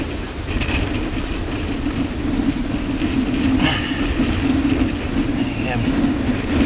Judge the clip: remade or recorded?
recorded